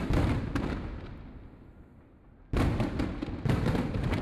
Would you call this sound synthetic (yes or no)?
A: no